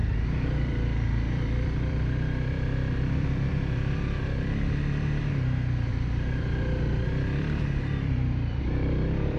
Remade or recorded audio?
remade